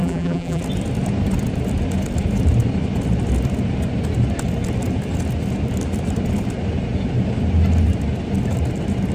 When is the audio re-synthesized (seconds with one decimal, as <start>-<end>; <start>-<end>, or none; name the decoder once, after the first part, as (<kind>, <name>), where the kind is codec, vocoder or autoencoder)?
0.0-0.6 (vocoder, BigVGAN v2)